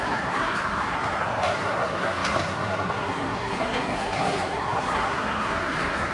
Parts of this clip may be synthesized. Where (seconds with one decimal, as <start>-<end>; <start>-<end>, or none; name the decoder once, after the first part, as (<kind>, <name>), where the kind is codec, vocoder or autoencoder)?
0.0-6.1 (codec, SNAC)